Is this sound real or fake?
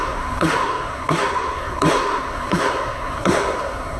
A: fake